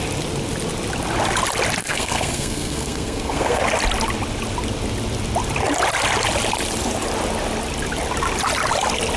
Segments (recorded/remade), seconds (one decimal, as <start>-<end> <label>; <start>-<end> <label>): 0.0-1.8 recorded; 1.8-3.6 remade; 3.6-9.2 recorded